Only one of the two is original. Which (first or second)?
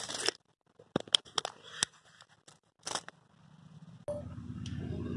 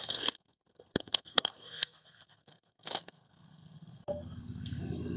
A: first